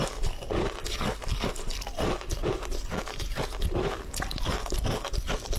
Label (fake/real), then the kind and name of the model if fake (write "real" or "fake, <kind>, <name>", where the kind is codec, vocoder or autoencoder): real